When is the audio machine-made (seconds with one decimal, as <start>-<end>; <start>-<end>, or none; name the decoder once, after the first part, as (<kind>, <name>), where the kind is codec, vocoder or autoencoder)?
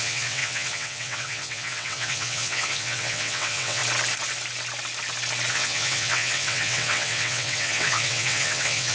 0.0-3.8 (vocoder, WaveNeXt); 5.5-8.9